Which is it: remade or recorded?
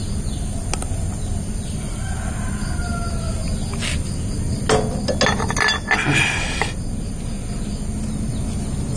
recorded